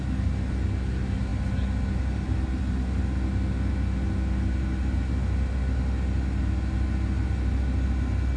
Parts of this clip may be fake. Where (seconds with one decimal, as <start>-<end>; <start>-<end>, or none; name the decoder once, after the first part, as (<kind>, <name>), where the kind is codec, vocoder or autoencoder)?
none